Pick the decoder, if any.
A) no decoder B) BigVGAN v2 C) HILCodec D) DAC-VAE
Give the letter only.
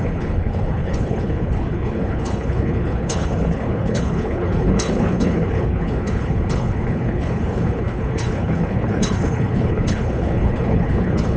C